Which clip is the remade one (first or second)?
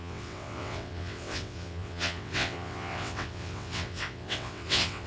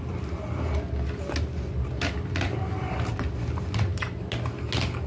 first